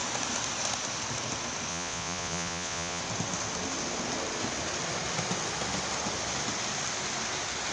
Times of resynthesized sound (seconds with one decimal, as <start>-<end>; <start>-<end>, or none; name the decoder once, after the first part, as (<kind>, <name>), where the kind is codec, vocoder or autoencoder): 1.7-3.0 (vocoder, Vocos)